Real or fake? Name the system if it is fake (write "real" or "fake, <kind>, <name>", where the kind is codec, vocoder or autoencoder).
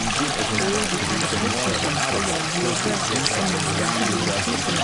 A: real